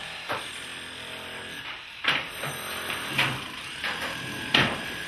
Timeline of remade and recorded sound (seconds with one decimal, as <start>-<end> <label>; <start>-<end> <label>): 0.0-0.7 remade; 0.7-1.7 recorded; 1.7-5.1 remade